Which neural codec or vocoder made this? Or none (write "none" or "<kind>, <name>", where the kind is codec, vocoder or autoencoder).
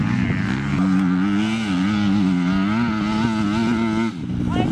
none